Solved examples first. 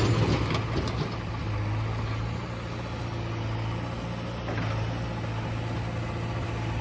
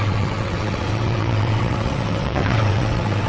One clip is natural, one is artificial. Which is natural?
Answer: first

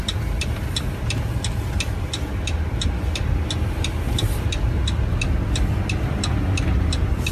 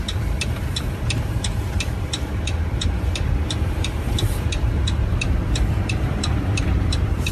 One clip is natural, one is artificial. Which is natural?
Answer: first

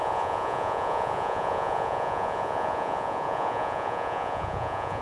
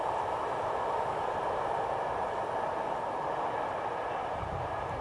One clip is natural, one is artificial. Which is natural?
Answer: second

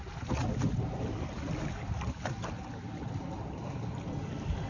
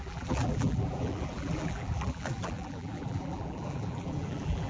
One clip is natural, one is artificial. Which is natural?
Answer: first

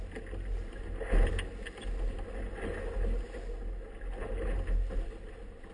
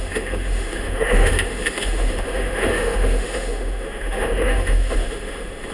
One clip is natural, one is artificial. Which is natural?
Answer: first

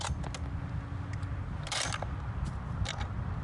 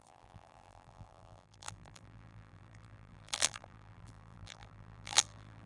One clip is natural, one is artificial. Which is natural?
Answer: first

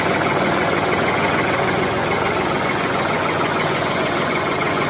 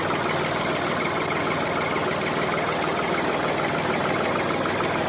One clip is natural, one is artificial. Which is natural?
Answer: second